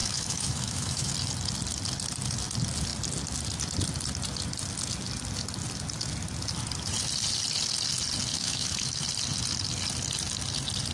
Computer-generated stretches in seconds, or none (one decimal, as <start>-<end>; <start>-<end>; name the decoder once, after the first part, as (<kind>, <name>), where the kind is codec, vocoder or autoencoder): 0.0-1.1 (autoencoder, DAC-VAE); 8.3-9.0